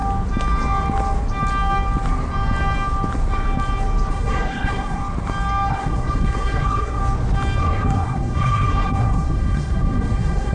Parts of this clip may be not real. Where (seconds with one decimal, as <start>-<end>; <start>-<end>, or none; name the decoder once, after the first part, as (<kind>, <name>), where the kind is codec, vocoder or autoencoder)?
4.1-5.0 (codec, SNAC); 5.7-7.0; 7.6-10.5